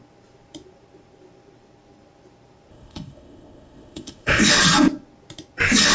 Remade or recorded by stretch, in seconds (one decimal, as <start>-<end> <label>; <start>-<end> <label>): 0.0-2.7 recorded; 2.7-4.5 remade; 4.5-5.9 recorded